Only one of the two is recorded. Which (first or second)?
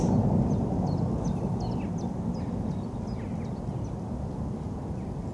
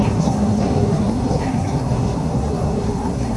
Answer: first